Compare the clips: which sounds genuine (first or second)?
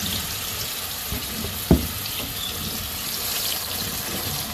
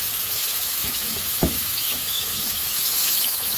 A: first